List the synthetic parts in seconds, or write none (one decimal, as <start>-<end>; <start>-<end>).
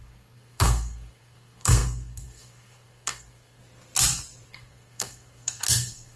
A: 0.0-3.6; 4.5-6.2